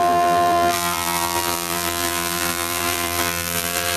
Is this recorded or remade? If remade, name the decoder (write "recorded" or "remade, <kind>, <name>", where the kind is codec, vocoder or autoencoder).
remade, vocoder, BigVGAN v2